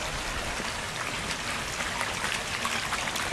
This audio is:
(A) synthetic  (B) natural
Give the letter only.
A